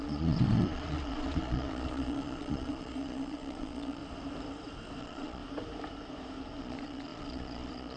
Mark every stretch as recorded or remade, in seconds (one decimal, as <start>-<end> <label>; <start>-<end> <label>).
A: 0.0-4.0 remade; 4.0-5.0 recorded; 5.0-5.4 remade; 5.4-6.6 recorded; 6.6-8.0 remade